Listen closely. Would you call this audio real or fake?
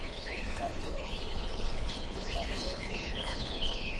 fake